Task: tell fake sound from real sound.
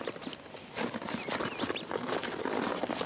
real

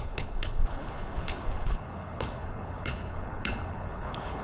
fake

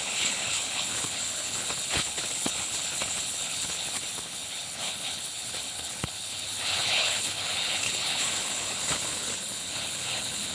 fake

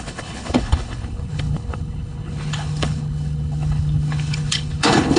fake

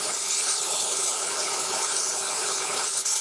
fake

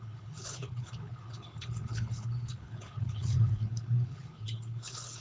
fake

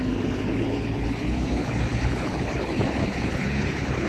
fake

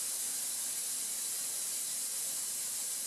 real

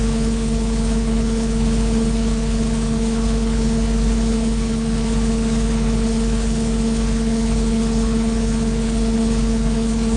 fake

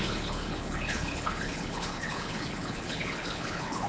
fake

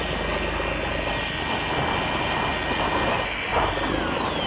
real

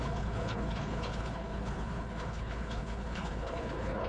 fake